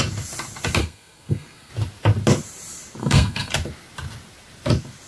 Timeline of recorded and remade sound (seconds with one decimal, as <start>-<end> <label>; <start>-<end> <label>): 0.0-0.8 recorded; 0.8-1.7 remade; 1.7-3.0 recorded; 3.0-3.5 remade; 3.5-5.1 recorded